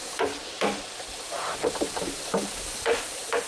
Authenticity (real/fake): real